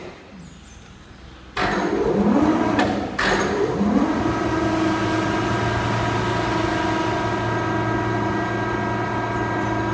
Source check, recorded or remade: recorded